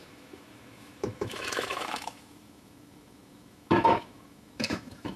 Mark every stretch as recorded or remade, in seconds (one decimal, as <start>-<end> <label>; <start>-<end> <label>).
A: 0.0-5.2 remade